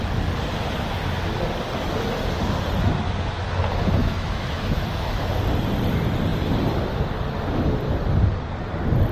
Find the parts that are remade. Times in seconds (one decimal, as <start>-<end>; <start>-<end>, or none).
4.0-5.3